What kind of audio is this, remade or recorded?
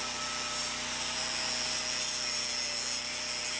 recorded